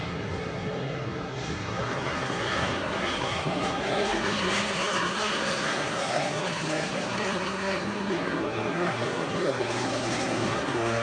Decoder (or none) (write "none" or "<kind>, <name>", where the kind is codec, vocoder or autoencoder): codec, SNAC